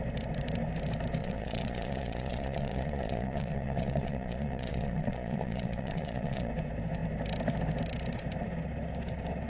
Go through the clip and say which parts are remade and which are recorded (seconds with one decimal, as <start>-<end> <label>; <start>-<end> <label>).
0.0-1.2 recorded; 1.2-6.5 remade; 6.5-9.5 recorded